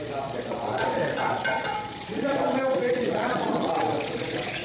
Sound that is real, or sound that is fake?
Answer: fake